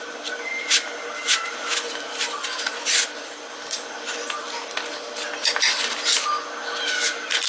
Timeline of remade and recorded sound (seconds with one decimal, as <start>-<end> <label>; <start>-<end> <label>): 0.0-2.7 recorded; 2.7-3.5 remade; 3.5-7.5 recorded